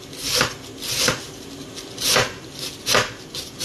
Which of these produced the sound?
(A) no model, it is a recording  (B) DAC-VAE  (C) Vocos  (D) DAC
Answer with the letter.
A